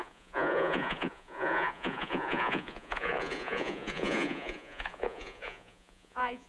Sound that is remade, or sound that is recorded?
remade